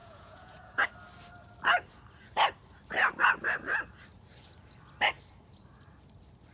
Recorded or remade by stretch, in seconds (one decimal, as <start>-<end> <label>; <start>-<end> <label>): 0.0-0.9 remade; 0.9-6.5 recorded